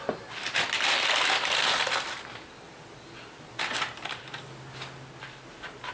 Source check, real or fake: real